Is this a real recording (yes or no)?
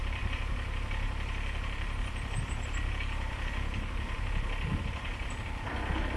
no